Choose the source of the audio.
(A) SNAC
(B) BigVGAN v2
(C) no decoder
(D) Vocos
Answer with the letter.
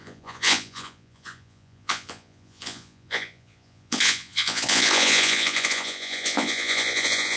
D